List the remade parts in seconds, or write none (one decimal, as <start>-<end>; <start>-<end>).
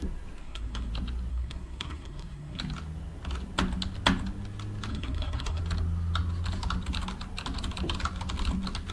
0.4-0.9; 1.3-2.6; 4.9-5.6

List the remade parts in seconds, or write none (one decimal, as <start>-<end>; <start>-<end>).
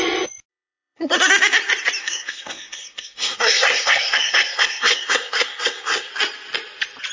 0.5-1.3; 2.0-6.1